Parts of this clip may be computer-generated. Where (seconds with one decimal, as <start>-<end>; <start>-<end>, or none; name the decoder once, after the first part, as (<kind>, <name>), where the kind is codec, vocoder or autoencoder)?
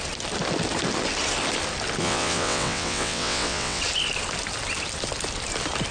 2.0-3.8 (vocoder, WaveNeXt)